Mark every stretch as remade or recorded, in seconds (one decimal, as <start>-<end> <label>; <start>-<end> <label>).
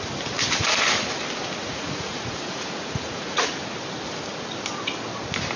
0.0-1.6 recorded; 1.6-3.5 remade; 3.5-5.6 recorded